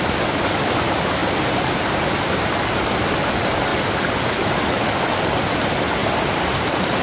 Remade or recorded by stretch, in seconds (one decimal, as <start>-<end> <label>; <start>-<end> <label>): 0.0-6.0 recorded; 6.0-7.0 remade